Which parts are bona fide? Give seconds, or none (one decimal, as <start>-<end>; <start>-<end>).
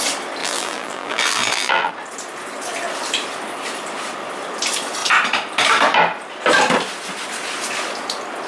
0.0-0.4; 1.9-8.5